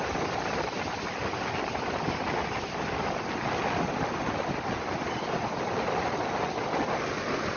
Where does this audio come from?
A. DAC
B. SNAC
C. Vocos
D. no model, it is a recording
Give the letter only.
D